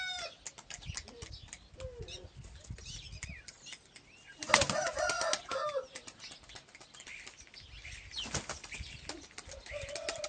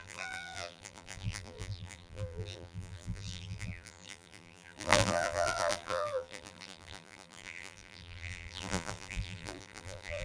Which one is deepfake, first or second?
second